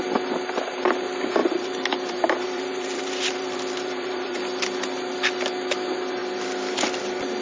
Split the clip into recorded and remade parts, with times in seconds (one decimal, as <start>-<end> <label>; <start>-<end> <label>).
0.0-1.4 recorded; 1.4-4.4 remade; 4.4-7.4 recorded